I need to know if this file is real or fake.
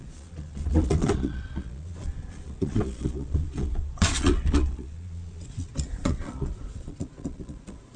fake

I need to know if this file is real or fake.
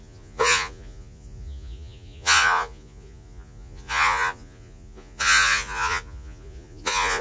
fake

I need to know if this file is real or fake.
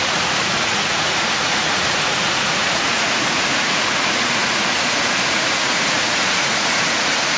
fake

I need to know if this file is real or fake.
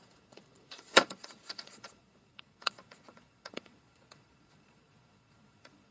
fake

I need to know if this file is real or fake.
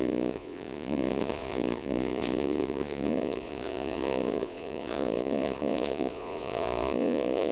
fake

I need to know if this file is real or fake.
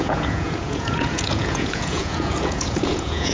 fake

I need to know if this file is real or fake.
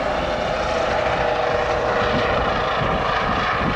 real